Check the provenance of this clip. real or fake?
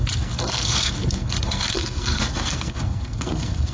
fake